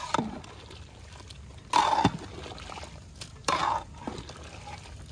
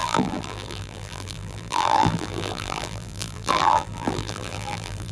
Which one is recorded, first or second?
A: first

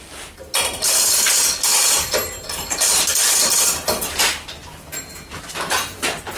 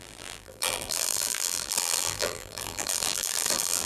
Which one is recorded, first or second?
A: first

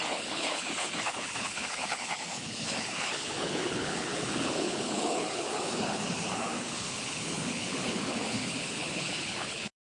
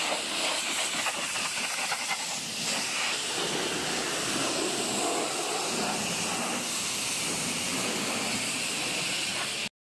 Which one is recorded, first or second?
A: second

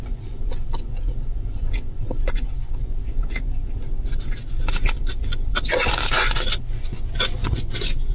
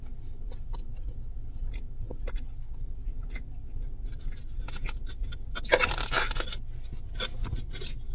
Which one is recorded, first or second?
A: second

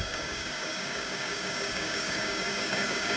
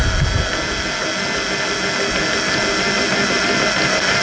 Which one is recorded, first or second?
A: second